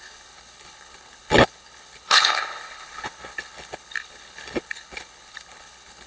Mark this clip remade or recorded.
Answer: remade